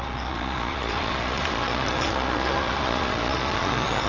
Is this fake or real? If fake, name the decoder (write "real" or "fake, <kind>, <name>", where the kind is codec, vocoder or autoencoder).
fake, vocoder, Vocos